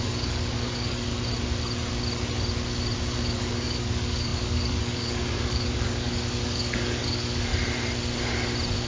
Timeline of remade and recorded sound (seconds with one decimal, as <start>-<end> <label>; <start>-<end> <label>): 0.0-1.1 remade; 1.1-3.0 recorded; 3.0-7.5 remade; 7.5-8.9 recorded